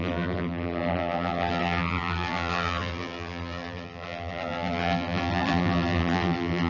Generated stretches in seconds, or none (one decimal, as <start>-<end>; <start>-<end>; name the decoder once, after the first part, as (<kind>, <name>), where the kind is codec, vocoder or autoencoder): 0.0-6.7 (vocoder, BigVGAN v2)